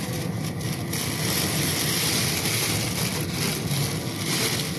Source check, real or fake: real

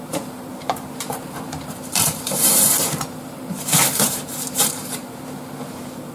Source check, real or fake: fake